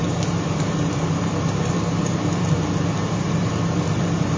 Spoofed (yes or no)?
yes